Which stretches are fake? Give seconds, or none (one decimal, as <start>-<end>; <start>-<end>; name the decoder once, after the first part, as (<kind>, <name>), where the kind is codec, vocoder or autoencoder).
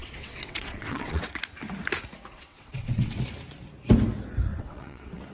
0.0-1.3 (vocoder, WaveNeXt); 2.3-3.2; 4.5-5.3